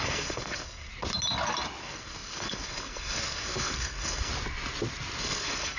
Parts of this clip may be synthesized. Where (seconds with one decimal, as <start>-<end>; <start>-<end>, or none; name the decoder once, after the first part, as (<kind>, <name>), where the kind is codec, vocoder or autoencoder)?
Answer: 0.0-0.9 (codec, SNAC); 1.8-4.3; 5.2-5.8